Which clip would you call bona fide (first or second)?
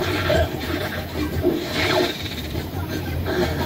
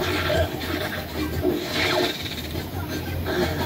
second